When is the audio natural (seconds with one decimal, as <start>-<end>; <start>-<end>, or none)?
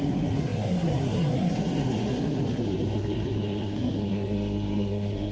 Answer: none